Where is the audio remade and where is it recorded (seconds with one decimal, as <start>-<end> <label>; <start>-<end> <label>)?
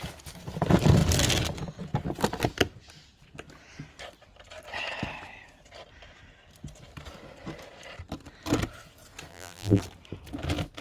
0.0-9.3 recorded; 9.3-9.8 remade; 9.8-10.8 recorded